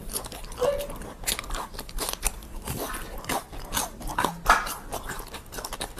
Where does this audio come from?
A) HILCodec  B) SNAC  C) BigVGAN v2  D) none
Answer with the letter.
D